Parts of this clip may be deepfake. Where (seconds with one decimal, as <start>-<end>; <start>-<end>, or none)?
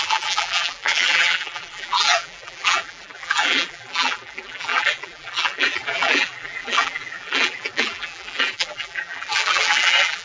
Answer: 0.0-10.2